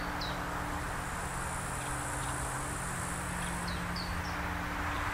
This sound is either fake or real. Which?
real